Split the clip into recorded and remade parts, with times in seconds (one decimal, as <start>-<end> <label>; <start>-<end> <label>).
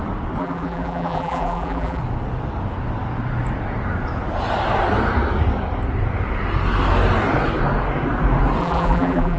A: 0.0-0.4 recorded; 0.4-2.0 remade; 2.0-8.6 recorded; 8.6-9.4 remade